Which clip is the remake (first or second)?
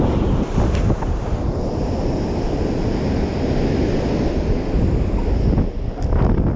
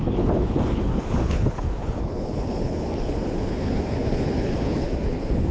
second